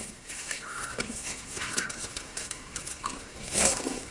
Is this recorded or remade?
remade